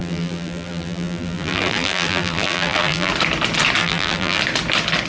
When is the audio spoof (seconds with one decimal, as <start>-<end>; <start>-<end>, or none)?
0.0-3.1; 3.8-4.4